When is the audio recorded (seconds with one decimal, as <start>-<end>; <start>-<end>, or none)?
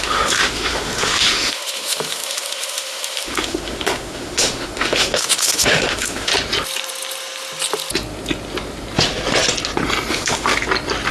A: 6.3-10.1; 10.5-11.1